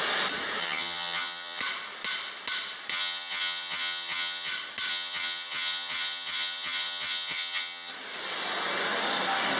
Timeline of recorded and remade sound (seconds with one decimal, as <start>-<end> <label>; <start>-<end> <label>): 0.0-0.6 recorded; 0.6-1.6 remade; 1.6-2.9 recorded; 2.9-4.5 remade; 4.5-4.9 recorded; 4.9-7.9 remade; 7.9-9.6 recorded